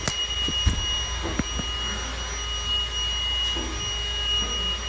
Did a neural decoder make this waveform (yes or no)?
no